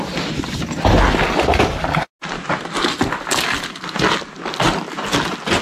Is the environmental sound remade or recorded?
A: recorded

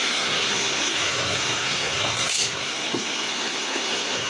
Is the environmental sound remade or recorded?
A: remade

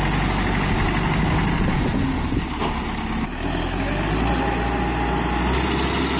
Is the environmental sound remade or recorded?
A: recorded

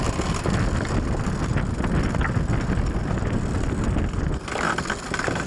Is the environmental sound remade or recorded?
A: recorded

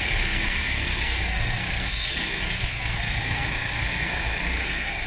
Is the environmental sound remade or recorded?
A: remade